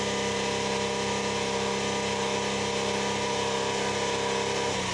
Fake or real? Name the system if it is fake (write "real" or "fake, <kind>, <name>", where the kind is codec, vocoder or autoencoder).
real